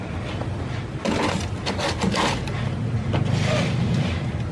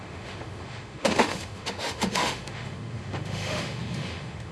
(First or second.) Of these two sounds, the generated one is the second